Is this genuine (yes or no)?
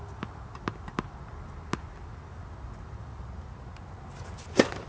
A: yes